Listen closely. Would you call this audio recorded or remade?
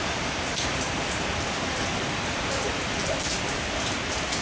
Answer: remade